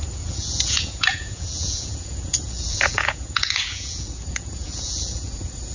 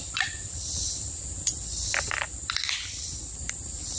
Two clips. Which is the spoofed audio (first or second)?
first